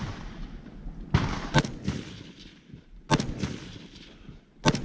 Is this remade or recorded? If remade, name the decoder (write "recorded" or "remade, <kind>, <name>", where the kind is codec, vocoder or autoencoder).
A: recorded